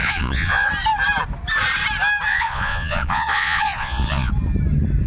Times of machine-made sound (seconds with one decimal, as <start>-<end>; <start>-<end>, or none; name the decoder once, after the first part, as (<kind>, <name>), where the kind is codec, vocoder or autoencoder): 0.0-0.7 (vocoder, Vocos); 2.3-4.3

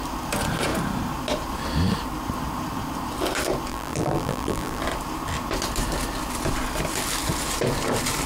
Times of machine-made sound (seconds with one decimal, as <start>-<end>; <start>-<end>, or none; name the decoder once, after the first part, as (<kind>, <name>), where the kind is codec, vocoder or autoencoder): 3.7-4.8 (vocoder, BigVGAN v2)

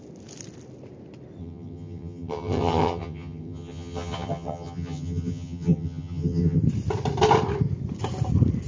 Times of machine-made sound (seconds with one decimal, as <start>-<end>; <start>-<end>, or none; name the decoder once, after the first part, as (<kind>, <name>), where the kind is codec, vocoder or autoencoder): 1.4-6.6 (vocoder, HiFi-GAN)

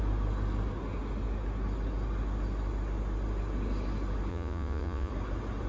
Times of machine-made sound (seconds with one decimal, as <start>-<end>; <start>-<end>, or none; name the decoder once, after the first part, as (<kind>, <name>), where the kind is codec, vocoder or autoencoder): 4.3-5.1 (vocoder, Vocos)

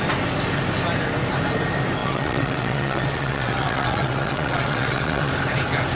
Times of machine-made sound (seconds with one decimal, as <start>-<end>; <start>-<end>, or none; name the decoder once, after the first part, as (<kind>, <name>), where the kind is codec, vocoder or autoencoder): 2.0-5.3 (vocoder, WaveNeXt)